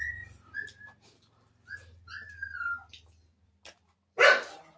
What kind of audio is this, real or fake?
real